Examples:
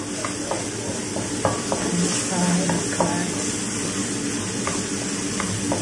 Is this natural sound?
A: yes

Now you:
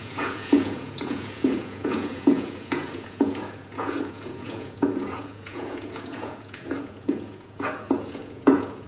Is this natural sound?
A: no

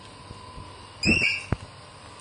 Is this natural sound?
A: yes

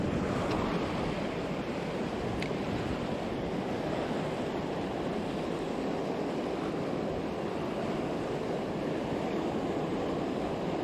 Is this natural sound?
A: yes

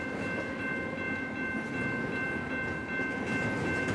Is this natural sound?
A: yes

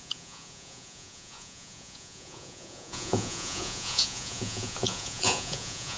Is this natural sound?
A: no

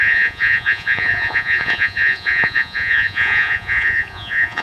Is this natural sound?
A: no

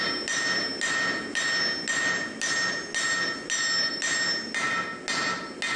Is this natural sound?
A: yes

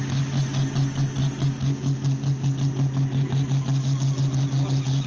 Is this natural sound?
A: yes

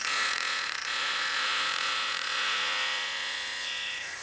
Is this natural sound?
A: no